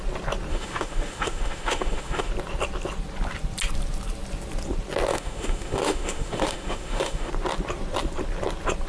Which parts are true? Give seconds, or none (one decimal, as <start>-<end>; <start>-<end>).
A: 0.0-0.5; 2.3-5.1; 7.3-8.9